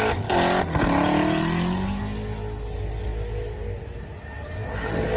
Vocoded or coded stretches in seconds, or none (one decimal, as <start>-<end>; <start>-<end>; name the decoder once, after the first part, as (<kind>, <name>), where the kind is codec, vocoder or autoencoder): none